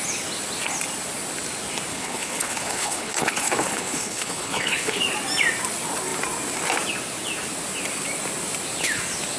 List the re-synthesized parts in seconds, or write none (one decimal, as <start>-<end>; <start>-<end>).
1.9-5.0